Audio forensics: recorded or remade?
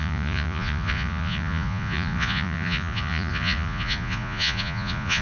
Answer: remade